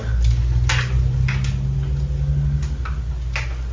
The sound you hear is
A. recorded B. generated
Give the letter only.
A